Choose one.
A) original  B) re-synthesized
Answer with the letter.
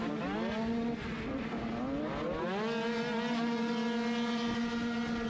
A